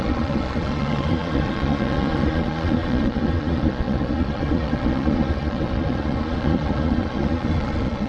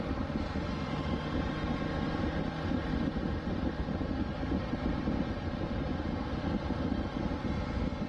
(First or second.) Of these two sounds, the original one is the second